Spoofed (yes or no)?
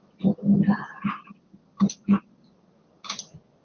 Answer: no